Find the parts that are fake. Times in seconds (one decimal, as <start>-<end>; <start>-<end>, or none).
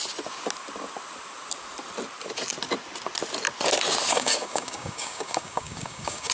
4.1-6.3